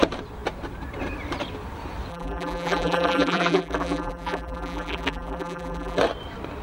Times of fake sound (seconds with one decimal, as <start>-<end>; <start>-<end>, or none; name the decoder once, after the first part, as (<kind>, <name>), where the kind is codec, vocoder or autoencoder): 2.1-6.0 (vocoder, BigVGAN v2)